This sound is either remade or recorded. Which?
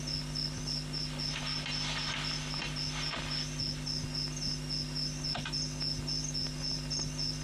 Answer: recorded